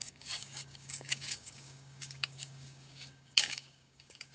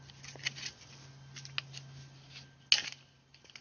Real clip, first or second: second